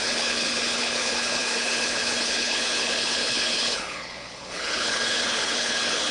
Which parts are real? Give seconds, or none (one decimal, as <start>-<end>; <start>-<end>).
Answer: none